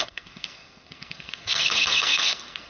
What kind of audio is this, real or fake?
fake